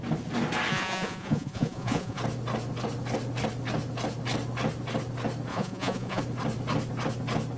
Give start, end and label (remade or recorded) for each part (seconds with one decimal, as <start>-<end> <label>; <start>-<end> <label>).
0.0-0.7 recorded; 0.7-2.2 remade; 2.2-5.5 recorded; 5.5-6.2 remade; 6.2-7.6 recorded